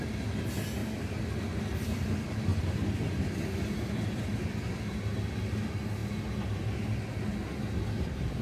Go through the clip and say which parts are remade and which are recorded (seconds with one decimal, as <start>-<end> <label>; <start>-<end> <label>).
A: 0.0-0.8 recorded; 0.8-1.6 remade; 1.6-2.5 recorded; 2.5-4.5 remade; 4.5-8.4 recorded